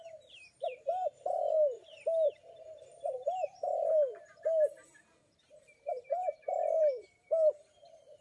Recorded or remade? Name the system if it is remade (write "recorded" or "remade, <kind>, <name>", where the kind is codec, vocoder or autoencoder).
remade, vocoder, BigVGAN v2